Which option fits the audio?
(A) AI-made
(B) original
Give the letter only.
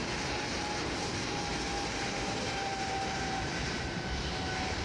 A